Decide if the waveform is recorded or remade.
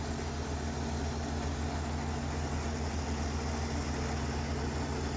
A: recorded